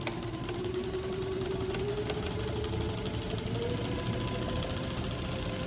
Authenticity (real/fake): real